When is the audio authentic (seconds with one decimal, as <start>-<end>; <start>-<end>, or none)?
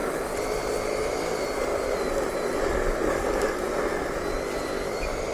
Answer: 0.0-1.7; 4.3-5.3